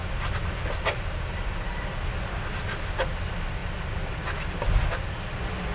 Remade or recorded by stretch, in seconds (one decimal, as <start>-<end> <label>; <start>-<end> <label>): 0.0-5.7 recorded